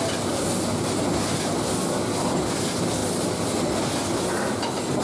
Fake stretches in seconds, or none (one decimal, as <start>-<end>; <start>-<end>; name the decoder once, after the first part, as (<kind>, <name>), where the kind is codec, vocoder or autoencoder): none